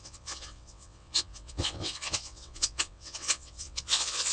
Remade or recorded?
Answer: remade